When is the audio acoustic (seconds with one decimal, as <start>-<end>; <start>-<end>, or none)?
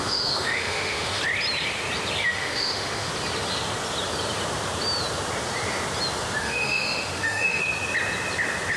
1.2-2.2; 3.1-6.4; 7.6-8.8